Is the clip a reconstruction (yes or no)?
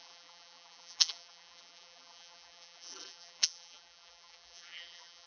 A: yes